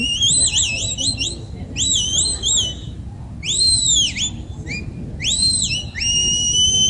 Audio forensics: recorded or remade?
recorded